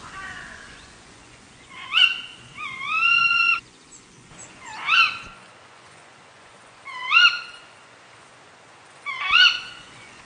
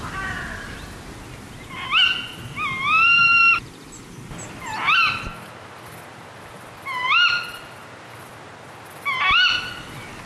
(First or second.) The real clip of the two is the second